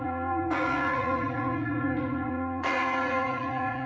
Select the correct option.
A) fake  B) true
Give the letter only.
A